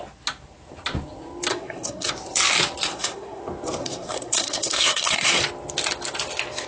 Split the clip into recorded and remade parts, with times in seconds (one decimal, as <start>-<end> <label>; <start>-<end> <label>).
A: 0.0-1.5 recorded; 1.5-2.1 remade; 2.1-2.9 recorded; 2.9-3.4 remade; 3.4-3.8 recorded; 3.8-5.4 remade; 5.4-6.7 recorded